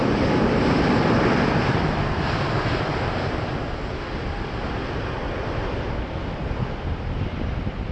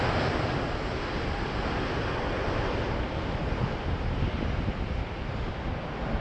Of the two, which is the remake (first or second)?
first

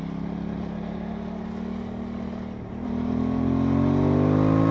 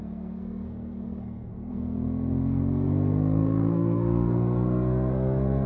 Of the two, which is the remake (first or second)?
second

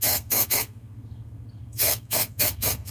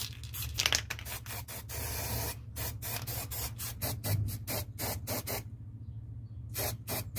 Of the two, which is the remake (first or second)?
first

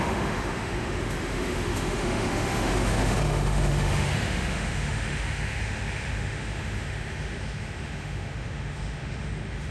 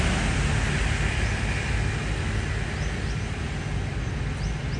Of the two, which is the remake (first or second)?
first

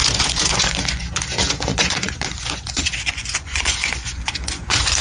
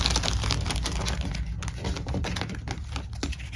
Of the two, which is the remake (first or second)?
first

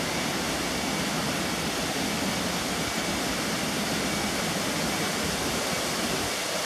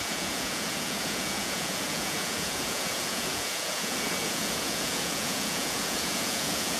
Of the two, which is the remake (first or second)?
second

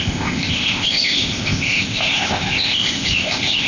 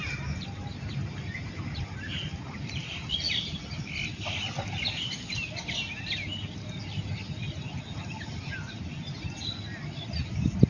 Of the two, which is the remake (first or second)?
first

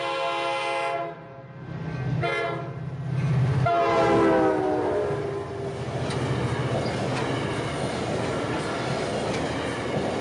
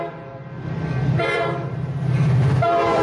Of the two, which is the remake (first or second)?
second